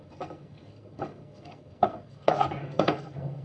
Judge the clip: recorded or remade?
remade